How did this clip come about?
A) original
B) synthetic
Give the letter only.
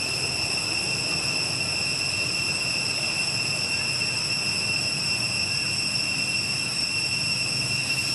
A